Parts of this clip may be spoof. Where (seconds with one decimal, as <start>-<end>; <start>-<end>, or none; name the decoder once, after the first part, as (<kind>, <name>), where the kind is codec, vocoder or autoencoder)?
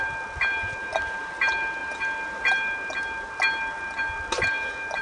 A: none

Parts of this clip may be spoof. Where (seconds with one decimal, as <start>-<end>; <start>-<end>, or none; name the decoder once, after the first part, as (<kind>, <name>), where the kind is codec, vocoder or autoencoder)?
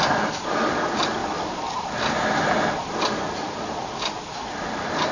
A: none